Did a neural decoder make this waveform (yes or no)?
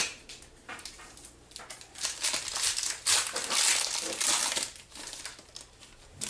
no